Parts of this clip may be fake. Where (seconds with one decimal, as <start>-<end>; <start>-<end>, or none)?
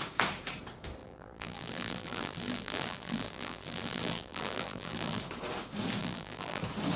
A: 1.0-5.2; 6.0-6.6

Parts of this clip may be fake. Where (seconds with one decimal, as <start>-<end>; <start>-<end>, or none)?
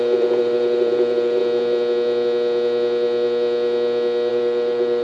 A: 0.0-1.4; 4.3-5.0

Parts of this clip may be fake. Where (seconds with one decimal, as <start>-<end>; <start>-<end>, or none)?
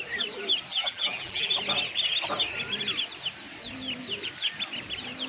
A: 0.7-1.5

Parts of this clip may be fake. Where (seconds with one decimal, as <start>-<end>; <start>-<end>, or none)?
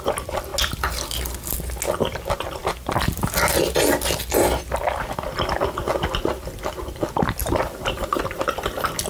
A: 7.4-8.2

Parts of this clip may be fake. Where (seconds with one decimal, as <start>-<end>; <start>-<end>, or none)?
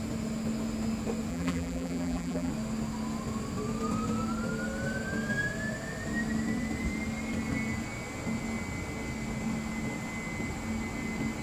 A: 1.3-2.5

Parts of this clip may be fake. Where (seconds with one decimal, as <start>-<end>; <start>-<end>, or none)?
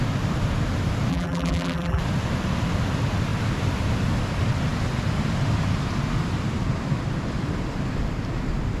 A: 1.1-2.0